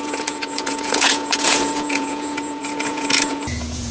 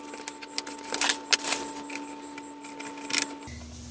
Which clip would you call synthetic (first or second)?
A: first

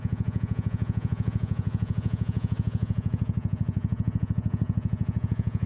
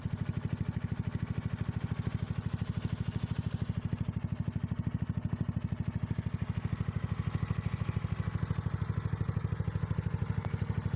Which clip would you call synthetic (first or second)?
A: first